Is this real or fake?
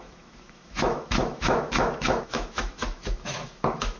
fake